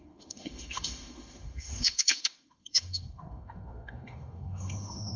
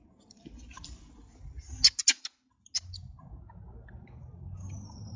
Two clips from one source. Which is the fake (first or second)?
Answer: first